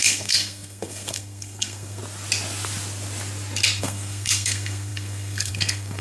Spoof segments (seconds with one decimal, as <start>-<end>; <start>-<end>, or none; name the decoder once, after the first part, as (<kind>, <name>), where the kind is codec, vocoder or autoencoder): 0.0-2.0 (codec, SNAC); 3.8-6.0